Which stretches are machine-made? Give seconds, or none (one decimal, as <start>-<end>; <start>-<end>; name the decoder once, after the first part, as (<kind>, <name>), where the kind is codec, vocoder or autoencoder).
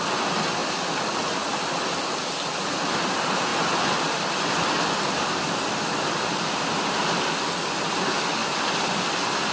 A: none